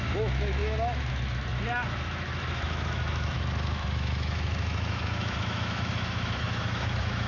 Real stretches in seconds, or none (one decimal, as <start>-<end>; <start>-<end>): none